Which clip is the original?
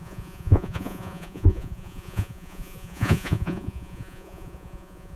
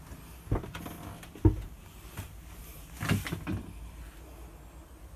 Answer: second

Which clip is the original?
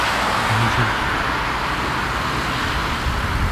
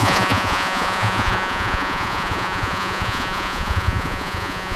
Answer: first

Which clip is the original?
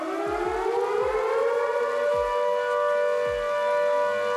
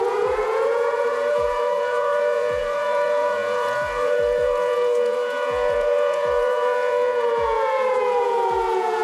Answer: first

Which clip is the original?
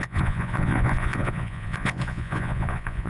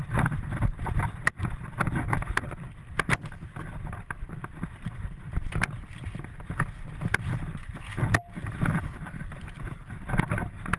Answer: second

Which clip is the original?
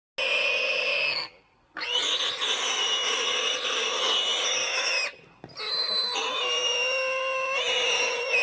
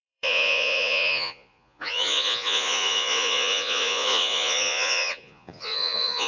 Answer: first